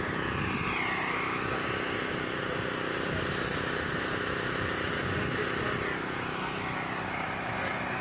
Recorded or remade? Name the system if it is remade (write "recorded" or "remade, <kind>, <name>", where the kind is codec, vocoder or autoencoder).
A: recorded